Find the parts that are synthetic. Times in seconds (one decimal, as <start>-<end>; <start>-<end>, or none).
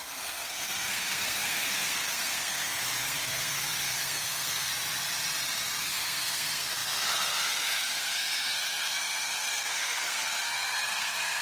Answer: 0.0-4.7; 5.8-11.4